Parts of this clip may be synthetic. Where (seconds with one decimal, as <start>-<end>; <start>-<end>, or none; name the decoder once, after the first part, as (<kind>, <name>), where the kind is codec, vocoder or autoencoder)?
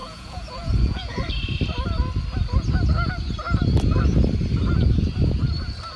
0.0-1.3 (vocoder, Vocos)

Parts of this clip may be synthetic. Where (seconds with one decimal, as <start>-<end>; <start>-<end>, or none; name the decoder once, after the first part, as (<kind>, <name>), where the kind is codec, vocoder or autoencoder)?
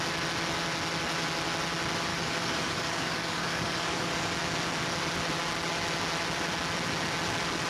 2.1-4.1 (codec, DAC)